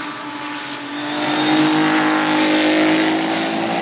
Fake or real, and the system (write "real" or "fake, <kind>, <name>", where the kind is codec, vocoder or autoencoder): real